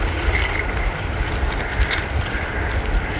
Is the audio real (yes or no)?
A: yes